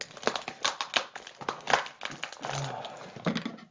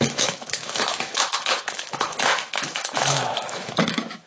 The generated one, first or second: second